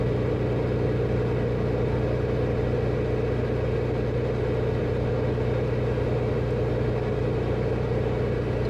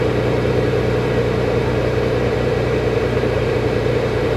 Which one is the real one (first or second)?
first